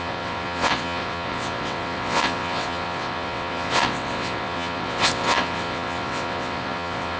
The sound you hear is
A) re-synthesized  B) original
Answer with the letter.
A